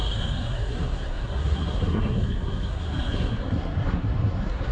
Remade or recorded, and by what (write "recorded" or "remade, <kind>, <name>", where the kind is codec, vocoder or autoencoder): remade, codec, SNAC